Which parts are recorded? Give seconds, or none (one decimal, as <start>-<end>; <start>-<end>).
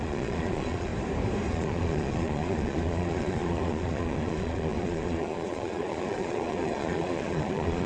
0.9-1.5